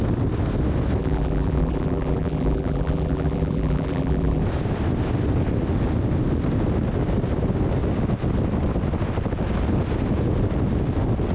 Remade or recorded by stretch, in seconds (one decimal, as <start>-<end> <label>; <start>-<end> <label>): 0.0-1.0 recorded; 1.0-4.4 remade; 4.4-11.3 recorded